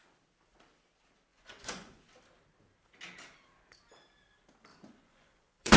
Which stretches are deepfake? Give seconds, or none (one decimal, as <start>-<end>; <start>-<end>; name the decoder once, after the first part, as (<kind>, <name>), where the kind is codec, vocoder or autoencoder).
1.3-2.0 (vocoder, Vocos); 4.7-5.8